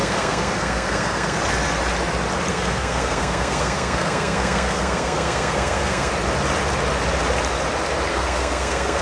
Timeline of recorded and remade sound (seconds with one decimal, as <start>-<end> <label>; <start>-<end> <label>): 0.0-1.4 remade; 1.4-2.5 recorded; 2.5-6.1 remade; 6.1-8.1 recorded; 8.1-9.0 remade